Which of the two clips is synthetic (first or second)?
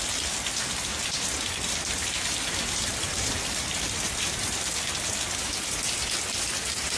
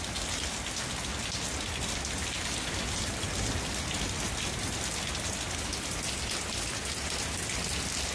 first